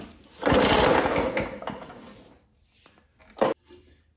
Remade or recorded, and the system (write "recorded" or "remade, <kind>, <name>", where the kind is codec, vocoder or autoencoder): recorded